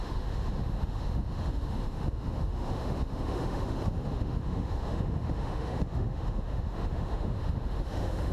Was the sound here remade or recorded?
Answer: remade